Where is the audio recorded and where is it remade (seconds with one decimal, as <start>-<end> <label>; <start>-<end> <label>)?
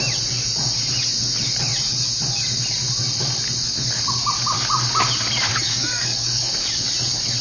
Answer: 0.0-5.5 recorded; 5.5-6.5 remade; 6.5-7.4 recorded